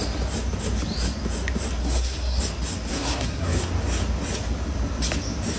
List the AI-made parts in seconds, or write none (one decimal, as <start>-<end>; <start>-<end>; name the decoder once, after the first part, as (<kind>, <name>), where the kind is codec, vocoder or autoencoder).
1.8-2.4 (codec, SNAC); 2.9-3.7